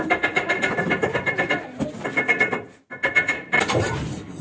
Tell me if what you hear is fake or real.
real